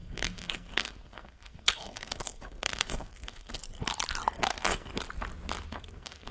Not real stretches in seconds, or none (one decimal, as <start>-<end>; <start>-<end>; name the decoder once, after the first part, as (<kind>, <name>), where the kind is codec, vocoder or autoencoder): 0.0-3.6 (codec, SNAC); 4.5-4.9; 5.7-6.3